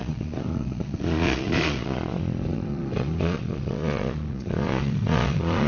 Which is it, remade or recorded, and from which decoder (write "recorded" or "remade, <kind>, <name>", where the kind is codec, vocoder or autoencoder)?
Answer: remade, vocoder, Vocos